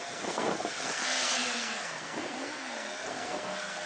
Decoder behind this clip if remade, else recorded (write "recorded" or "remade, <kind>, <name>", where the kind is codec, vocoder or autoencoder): remade, codec, SNAC